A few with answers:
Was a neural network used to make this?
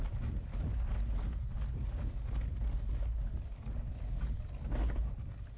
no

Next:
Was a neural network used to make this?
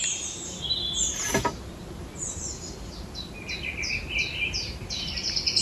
no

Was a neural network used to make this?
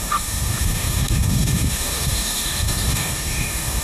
yes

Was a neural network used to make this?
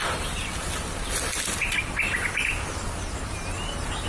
no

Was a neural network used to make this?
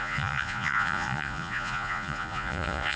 yes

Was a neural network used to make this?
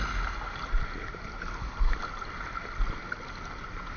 no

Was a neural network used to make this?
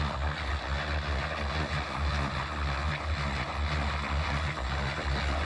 yes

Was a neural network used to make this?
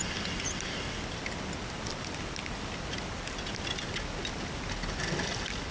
no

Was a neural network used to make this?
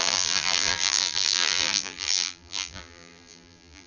yes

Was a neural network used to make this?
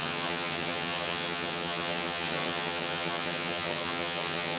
yes